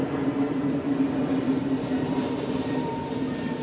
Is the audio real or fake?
fake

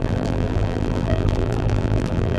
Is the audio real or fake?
fake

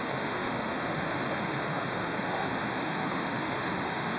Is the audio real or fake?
fake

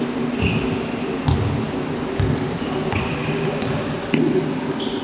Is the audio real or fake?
real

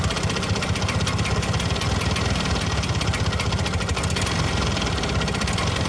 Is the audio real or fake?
real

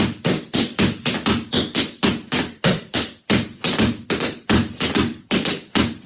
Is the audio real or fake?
real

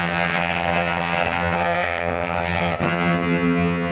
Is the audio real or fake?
fake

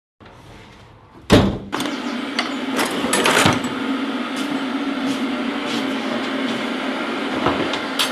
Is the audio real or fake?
real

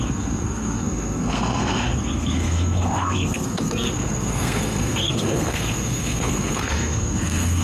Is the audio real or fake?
fake